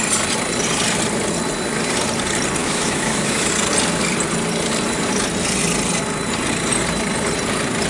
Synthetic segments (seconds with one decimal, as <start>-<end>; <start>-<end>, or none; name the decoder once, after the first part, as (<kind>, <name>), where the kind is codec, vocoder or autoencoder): 2.6-3.5 (autoencoder, DAC-VAE)